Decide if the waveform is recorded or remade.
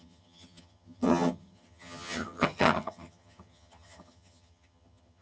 remade